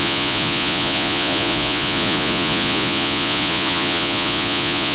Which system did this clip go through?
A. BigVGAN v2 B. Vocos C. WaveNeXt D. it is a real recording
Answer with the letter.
B